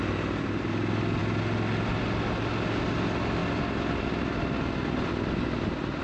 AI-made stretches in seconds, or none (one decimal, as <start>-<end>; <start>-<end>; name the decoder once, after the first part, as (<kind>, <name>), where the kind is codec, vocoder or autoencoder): none